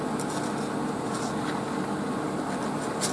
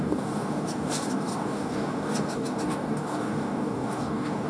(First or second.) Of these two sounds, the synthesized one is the second